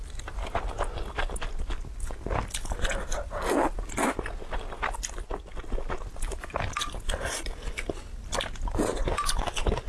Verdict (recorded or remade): recorded